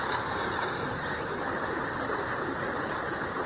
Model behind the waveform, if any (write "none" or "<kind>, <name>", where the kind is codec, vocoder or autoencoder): none